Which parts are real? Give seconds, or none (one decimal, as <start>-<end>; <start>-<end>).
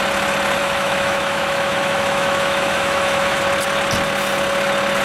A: 0.0-0.6; 3.4-5.0